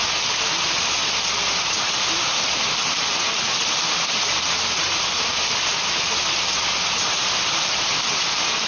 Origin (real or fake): real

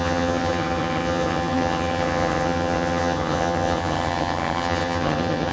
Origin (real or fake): fake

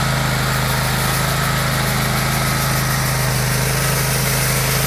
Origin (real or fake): real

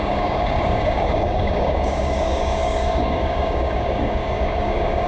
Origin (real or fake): fake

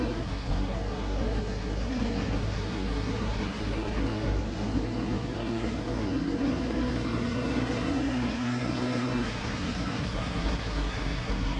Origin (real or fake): fake